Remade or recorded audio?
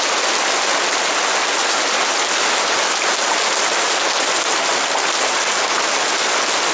recorded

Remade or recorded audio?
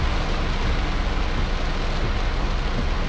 recorded